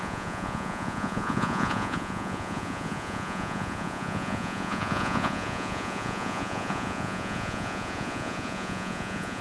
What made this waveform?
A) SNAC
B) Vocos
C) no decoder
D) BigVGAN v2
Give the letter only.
B